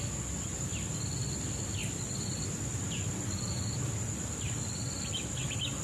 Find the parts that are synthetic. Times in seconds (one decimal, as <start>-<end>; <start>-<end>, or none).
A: none